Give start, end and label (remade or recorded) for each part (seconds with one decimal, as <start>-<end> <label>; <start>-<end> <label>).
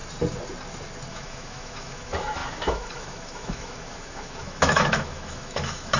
0.0-1.1 recorded; 1.1-6.0 remade